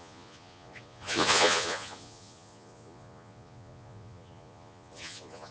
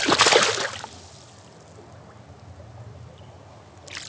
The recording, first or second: second